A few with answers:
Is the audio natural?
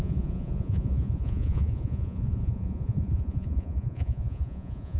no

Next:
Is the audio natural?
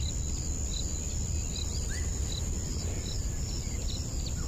yes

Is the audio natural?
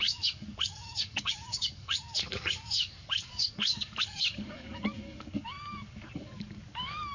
no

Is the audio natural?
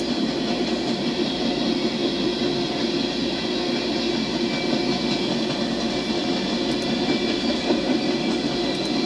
yes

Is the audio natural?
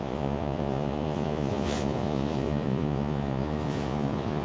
no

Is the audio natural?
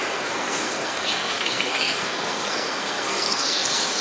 no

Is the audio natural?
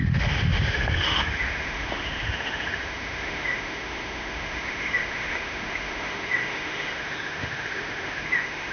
no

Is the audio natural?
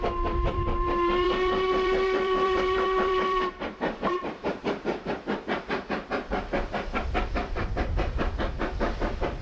no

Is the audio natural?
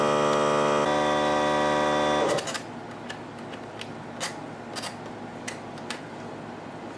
yes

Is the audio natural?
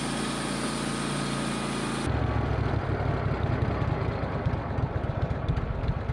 yes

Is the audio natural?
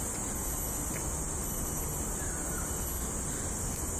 yes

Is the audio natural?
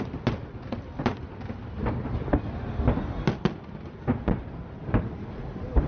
yes